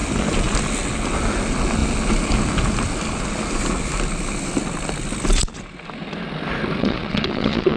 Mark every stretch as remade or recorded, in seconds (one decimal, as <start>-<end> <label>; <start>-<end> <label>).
0.0-6.8 recorded; 6.8-7.8 remade